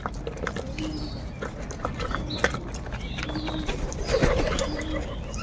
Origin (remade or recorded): recorded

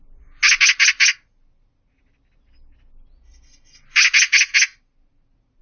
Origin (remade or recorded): recorded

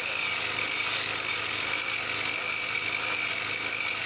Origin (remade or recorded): recorded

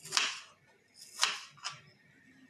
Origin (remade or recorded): recorded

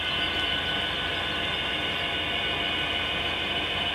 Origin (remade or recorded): recorded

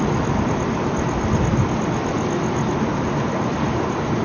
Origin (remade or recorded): recorded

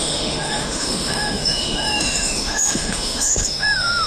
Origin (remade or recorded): remade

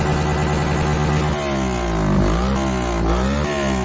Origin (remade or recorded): recorded